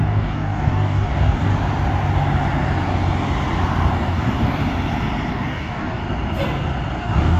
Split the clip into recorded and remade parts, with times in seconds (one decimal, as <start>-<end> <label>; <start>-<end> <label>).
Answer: 0.0-1.5 remade; 1.5-3.9 recorded; 3.9-4.6 remade; 4.6-5.3 recorded; 5.3-6.0 remade; 6.0-7.0 recorded; 7.0-7.4 remade